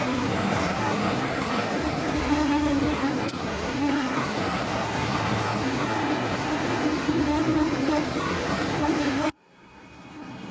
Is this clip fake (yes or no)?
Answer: yes